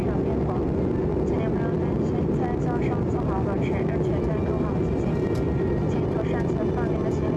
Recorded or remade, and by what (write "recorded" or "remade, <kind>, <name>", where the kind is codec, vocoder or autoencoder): recorded